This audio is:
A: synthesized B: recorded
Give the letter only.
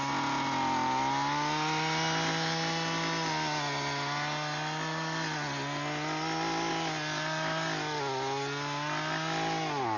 B